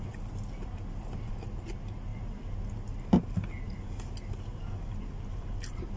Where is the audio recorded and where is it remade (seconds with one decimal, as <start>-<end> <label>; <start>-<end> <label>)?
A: 0.0-6.0 recorded